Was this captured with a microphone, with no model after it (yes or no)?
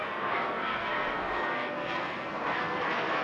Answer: no